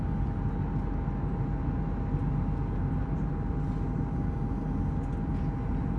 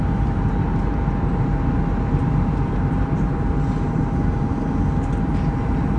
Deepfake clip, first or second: second